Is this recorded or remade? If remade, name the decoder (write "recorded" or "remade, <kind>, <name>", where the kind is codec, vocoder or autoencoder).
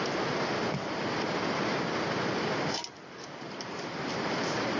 recorded